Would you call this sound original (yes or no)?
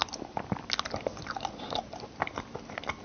yes